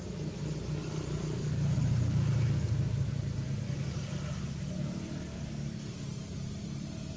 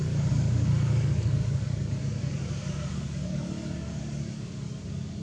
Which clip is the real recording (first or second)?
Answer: first